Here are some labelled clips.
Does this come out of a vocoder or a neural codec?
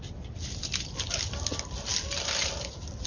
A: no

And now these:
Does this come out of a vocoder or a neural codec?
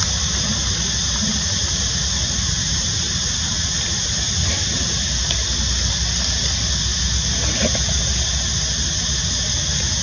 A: no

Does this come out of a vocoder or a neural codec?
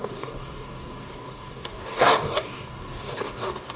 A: yes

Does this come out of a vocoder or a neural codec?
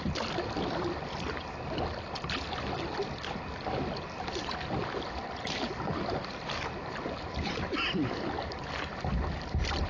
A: no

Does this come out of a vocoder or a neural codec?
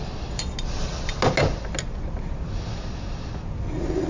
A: no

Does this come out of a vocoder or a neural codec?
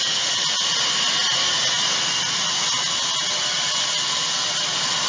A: no